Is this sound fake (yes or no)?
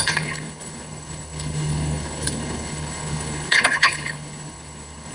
yes